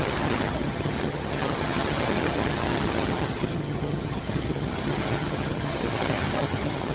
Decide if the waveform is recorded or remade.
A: remade